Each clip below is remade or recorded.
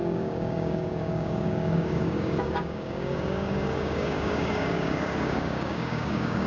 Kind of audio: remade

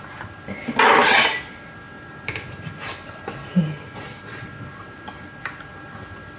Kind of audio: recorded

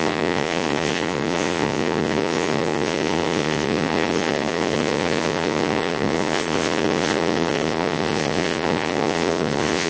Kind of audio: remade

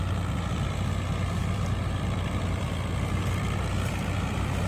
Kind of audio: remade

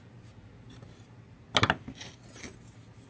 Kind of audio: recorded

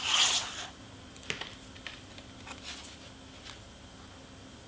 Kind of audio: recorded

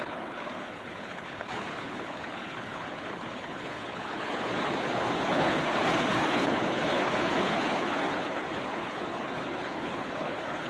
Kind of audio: remade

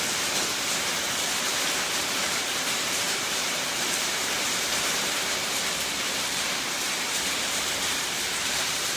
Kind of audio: remade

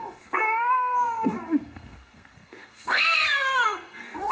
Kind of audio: remade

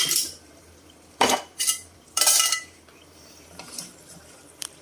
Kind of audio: remade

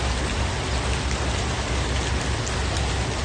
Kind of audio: recorded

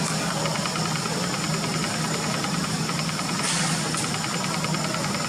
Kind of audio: recorded